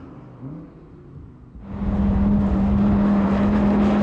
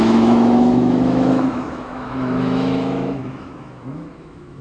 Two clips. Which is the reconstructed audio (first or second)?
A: second